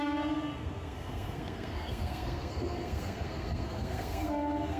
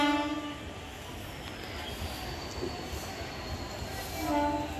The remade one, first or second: first